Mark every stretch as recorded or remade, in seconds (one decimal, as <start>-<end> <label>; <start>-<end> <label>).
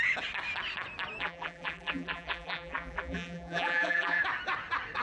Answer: 0.0-1.2 recorded; 1.2-4.2 remade; 4.2-5.0 recorded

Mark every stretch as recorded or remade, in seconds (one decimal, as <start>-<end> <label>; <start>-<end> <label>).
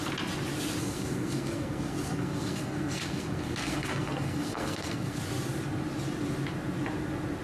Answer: 0.0-0.8 recorded; 0.8-5.2 remade; 5.2-7.4 recorded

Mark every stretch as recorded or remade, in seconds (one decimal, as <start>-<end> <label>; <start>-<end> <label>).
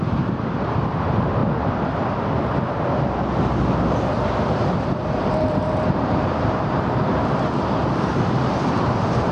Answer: 0.0-1.4 remade; 1.4-4.5 recorded; 4.5-9.3 remade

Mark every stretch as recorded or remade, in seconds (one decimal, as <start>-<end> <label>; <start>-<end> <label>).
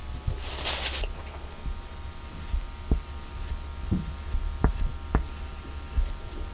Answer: 0.0-6.5 recorded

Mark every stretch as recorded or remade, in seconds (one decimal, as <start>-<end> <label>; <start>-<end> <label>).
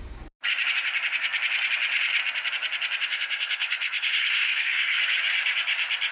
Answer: 0.0-3.1 recorded; 3.1-5.0 remade; 5.0-6.1 recorded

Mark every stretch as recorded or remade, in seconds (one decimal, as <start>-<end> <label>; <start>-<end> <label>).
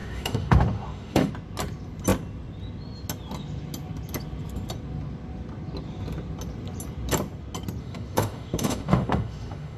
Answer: 0.0-1.3 remade; 1.3-7.8 recorded; 7.8-9.8 remade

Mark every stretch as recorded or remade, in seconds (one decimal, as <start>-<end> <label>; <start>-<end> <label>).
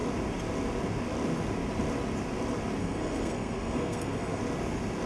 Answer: 0.0-2.8 recorded; 2.8-4.4 remade; 4.4-5.1 recorded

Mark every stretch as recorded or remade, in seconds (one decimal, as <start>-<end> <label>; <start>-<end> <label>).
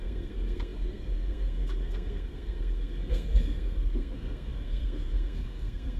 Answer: 0.0-6.0 remade